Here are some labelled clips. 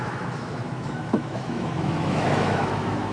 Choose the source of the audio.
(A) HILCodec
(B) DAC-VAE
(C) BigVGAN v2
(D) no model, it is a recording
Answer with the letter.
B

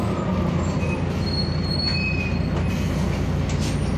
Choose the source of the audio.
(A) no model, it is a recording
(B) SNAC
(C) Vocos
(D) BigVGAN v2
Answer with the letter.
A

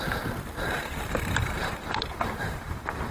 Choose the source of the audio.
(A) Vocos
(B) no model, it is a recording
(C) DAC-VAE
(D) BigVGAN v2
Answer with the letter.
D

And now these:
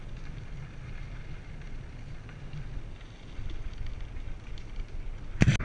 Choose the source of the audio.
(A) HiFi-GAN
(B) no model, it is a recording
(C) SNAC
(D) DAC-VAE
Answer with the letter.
B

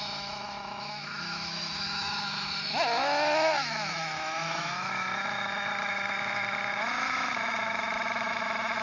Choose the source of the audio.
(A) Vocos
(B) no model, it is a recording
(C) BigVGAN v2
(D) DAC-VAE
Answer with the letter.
D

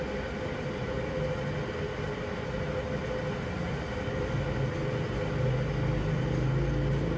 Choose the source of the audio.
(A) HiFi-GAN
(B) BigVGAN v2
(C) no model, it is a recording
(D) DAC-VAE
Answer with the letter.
C